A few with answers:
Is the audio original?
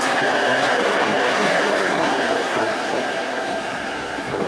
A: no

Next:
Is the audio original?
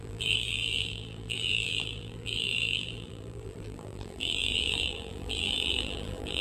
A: no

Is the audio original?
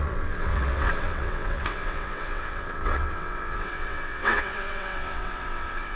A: no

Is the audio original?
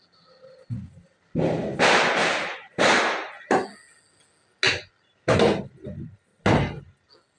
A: yes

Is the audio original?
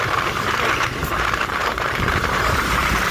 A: no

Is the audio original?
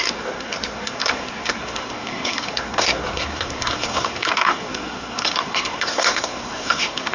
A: no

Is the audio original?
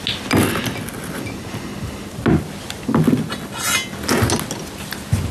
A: yes